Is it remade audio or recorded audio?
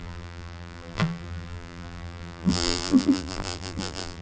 remade